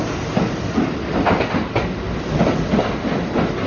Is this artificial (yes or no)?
no